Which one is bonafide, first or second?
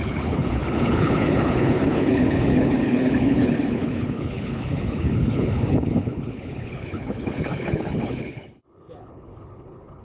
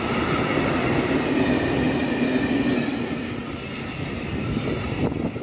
second